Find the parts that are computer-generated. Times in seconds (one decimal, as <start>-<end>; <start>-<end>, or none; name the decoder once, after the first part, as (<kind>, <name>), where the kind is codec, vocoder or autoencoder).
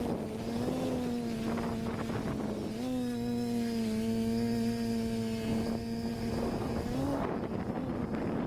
6.1-7.3 (codec, DAC)